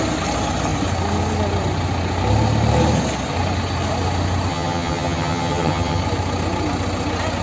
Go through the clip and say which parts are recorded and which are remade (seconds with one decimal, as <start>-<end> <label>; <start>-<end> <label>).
0.0-4.5 recorded; 4.5-6.0 remade; 6.0-7.4 recorded

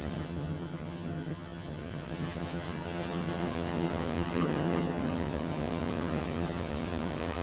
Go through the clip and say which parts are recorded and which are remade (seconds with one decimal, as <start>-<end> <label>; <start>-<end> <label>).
0.0-7.4 remade

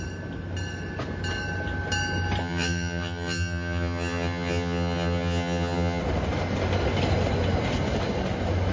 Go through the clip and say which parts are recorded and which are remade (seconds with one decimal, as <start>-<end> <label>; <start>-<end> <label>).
0.0-2.4 recorded; 2.4-6.0 remade; 6.0-8.7 recorded